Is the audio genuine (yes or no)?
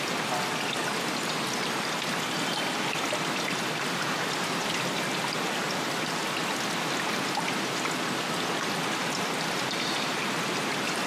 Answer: yes